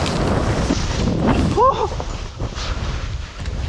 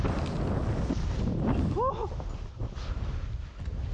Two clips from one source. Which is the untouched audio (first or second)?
second